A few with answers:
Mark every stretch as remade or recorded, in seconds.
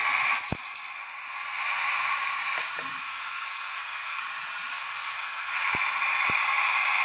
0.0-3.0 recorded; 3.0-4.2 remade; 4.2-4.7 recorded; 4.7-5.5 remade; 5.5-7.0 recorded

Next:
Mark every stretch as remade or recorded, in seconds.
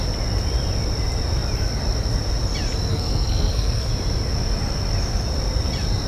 0.0-2.9 recorded; 2.9-3.9 remade; 3.9-6.1 recorded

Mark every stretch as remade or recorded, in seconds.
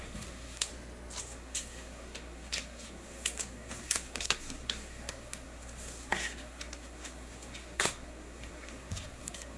0.0-0.7 remade; 0.7-1.2 recorded; 1.2-9.6 remade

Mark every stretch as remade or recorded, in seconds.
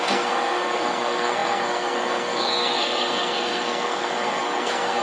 0.0-5.0 remade